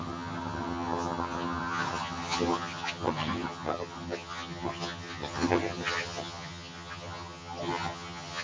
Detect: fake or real fake